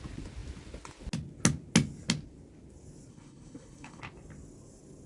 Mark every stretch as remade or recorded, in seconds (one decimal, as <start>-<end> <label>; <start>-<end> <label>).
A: 0.0-3.1 recorded; 3.1-4.0 remade; 4.0-5.1 recorded